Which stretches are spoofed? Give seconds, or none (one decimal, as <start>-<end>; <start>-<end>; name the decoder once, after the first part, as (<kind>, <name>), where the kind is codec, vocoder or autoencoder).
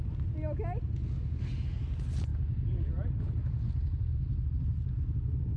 none